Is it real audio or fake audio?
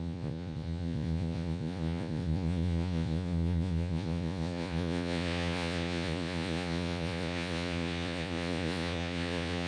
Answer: fake